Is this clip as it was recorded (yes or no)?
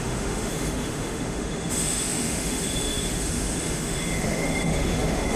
no